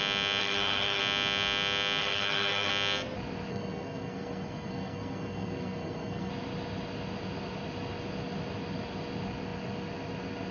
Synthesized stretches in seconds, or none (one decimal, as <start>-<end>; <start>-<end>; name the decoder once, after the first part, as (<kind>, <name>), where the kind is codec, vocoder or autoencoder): 0.4-1.0 (codec, SNAC); 2.0-2.7; 3.5-6.3